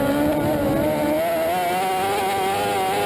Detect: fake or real real